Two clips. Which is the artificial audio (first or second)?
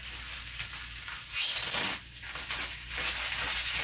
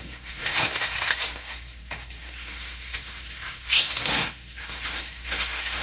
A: second